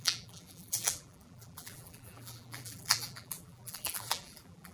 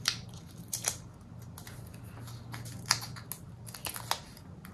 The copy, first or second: first